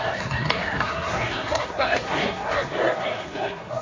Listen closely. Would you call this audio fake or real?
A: fake